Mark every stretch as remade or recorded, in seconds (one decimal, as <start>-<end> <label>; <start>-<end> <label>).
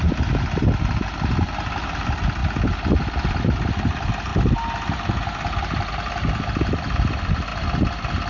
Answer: 0.0-8.3 recorded